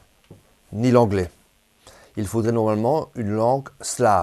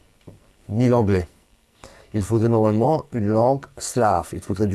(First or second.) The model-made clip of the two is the second